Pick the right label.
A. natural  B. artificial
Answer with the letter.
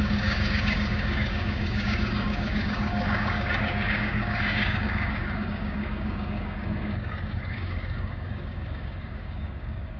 B